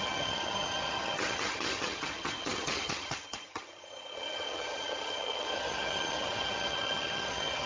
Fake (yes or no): yes